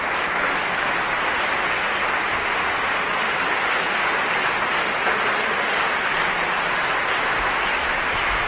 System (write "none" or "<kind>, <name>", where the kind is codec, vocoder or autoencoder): none